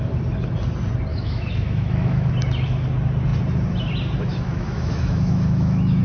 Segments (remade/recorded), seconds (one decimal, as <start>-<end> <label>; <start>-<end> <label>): 0.0-1.1 recorded; 1.1-2.3 remade; 2.3-4.3 recorded; 4.3-6.0 remade